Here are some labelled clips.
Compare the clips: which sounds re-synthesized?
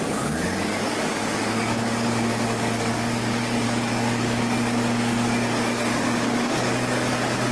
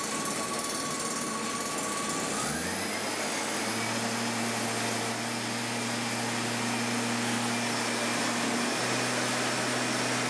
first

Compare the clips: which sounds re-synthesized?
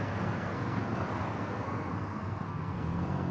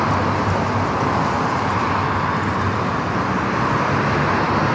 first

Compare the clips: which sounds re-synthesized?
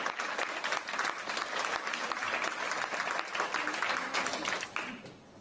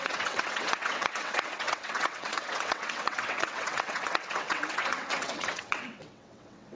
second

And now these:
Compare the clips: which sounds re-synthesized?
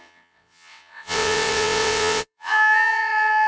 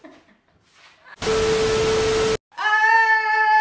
first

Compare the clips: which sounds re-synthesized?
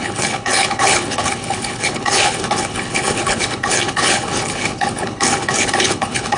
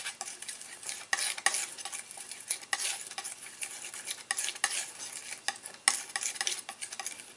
first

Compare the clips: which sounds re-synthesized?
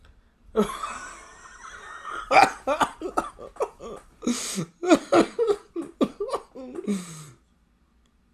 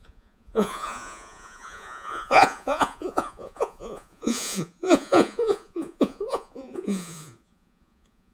second